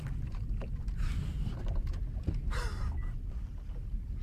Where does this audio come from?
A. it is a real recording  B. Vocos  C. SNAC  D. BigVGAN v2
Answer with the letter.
A